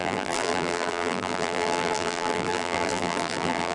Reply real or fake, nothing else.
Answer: fake